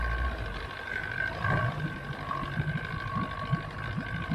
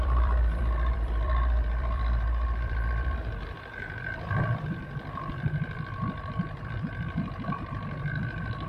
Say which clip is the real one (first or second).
first